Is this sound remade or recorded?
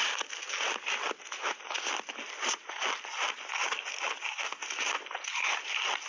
recorded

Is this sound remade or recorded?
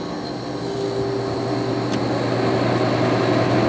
recorded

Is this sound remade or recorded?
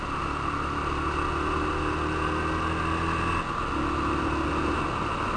recorded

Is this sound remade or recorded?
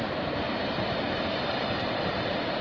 recorded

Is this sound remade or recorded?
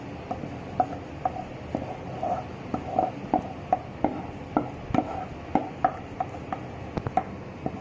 recorded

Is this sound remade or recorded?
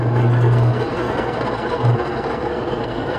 remade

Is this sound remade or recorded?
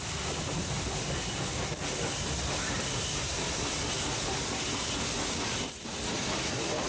recorded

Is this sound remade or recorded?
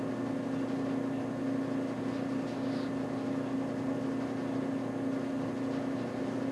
recorded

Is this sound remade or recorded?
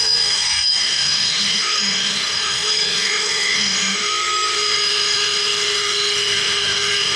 remade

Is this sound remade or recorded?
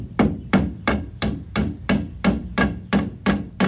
remade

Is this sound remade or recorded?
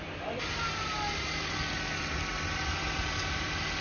recorded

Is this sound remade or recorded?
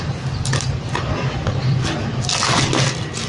recorded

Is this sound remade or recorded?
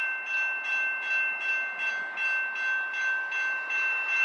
recorded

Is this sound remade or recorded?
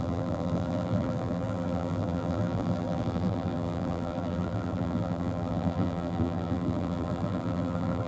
remade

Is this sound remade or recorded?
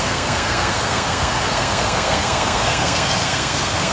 remade